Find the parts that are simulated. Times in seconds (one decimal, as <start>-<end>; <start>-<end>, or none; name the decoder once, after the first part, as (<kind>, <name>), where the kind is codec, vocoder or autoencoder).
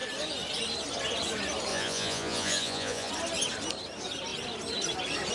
1.7-3.1 (vocoder, Vocos)